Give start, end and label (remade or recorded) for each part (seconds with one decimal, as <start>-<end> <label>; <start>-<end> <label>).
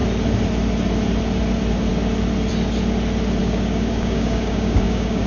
0.0-3.4 recorded; 3.4-5.3 remade